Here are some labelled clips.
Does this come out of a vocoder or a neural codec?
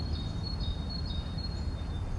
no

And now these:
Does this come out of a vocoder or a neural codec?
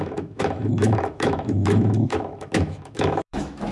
yes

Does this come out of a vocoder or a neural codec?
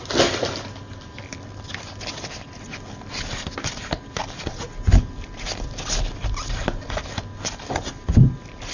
no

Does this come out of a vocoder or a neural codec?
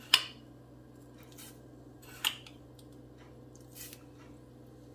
no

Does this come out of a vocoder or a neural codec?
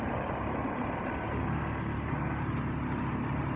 no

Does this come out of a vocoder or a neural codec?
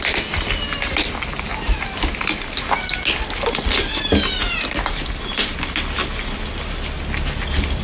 no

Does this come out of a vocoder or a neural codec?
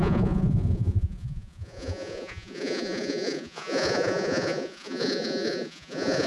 yes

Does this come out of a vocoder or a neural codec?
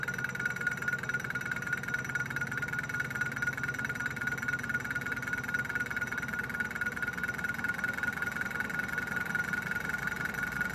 no